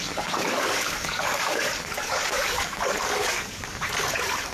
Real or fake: fake